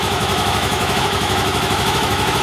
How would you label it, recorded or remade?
remade